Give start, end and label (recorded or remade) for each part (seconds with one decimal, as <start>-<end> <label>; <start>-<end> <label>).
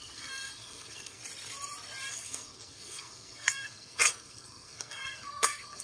0.0-1.2 remade; 1.2-2.1 recorded; 2.1-5.8 remade